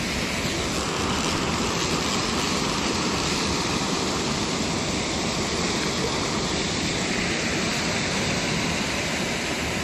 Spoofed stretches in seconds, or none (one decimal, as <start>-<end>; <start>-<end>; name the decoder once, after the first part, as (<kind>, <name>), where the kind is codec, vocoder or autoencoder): none